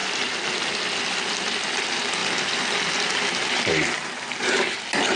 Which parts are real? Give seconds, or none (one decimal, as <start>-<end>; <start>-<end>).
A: 0.0-5.2